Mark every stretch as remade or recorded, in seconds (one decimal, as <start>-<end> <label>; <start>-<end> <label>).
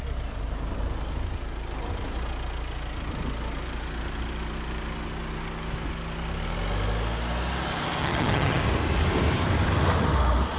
0.0-8.0 recorded; 8.0-8.6 remade; 8.6-10.6 recorded